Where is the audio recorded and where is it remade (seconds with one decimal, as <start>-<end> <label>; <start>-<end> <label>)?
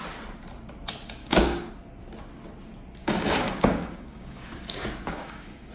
0.0-1.2 recorded; 1.2-1.7 remade; 1.7-3.0 recorded; 3.0-5.7 remade